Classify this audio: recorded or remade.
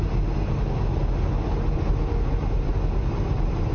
recorded